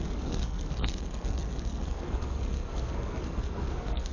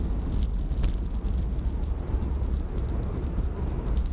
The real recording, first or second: second